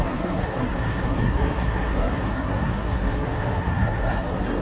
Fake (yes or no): yes